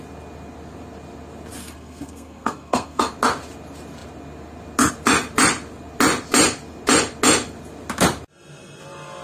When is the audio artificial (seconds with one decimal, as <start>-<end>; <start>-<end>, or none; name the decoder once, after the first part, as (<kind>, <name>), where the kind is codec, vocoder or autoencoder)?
1.6-3.1 (codec, SNAC)